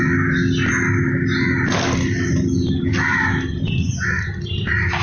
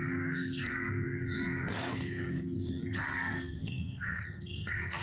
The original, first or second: first